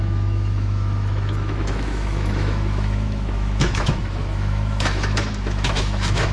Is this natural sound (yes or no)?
no